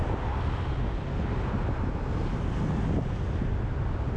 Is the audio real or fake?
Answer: real